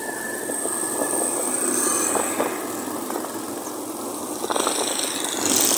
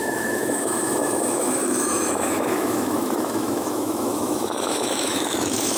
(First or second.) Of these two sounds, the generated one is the second